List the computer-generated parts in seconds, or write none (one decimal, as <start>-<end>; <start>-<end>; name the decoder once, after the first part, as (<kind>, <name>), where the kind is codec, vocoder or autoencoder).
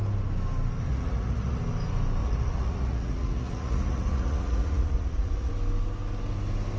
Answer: 0.9-1.6 (vocoder, Vocos); 2.2-5.5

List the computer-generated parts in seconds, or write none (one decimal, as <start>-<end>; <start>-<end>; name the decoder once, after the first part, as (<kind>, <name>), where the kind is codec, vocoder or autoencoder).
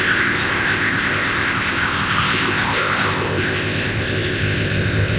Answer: 0.0-5.2 (codec, ZipCodec)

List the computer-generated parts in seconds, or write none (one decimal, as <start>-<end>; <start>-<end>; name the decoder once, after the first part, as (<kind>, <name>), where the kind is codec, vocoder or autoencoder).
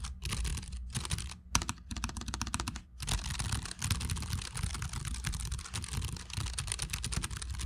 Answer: none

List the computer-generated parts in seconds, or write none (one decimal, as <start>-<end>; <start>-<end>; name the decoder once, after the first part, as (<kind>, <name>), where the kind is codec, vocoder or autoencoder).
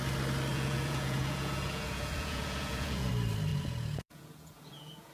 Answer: 0.5-3.1 (vocoder, Vocos); 3.5-5.1